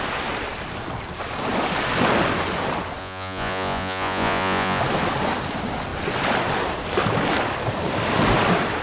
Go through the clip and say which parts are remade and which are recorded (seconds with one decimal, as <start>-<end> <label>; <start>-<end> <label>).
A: 0.0-3.0 recorded; 3.0-4.8 remade; 4.8-8.8 recorded